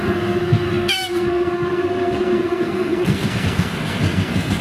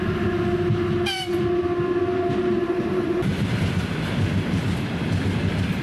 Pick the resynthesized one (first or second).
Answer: first